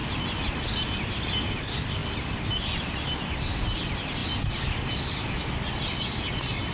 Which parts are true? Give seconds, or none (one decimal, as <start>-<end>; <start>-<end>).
0.0-6.7